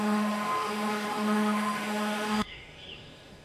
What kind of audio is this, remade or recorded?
remade